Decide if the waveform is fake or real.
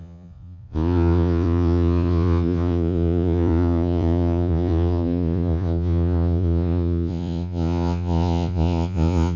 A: fake